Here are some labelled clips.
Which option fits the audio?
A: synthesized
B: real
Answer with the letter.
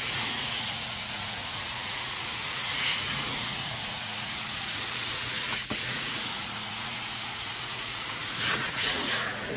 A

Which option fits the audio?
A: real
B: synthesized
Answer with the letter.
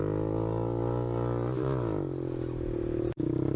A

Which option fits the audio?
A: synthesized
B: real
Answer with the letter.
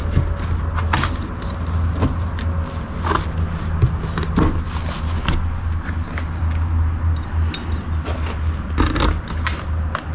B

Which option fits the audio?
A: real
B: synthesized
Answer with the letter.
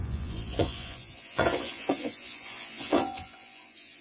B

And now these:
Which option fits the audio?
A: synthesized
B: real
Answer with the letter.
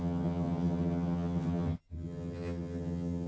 A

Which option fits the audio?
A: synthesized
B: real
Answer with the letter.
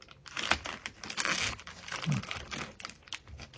B